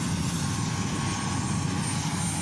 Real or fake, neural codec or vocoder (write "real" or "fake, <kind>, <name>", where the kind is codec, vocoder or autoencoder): real